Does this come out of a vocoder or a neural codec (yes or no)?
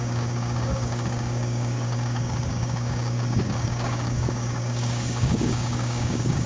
yes